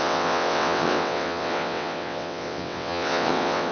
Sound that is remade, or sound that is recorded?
remade